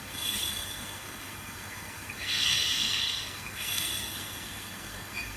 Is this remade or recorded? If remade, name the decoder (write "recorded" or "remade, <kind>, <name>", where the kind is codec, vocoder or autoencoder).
remade, codec, SNAC